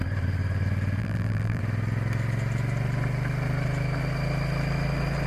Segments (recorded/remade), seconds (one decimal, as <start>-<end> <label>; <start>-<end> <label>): 0.0-1.0 recorded; 1.0-1.6 remade; 1.6-5.3 recorded